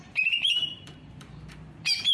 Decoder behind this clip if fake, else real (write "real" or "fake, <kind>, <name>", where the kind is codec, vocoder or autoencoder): fake, vocoder, BigVGAN v2